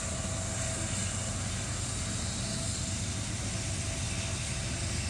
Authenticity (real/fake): real